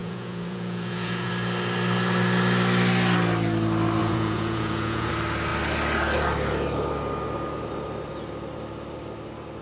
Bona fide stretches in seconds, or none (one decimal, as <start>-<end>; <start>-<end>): 1.3-4.0; 5.1-9.6